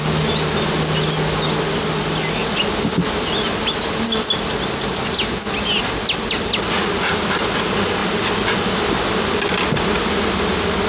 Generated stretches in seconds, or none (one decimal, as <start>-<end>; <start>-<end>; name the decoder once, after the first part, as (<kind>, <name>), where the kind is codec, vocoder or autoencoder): none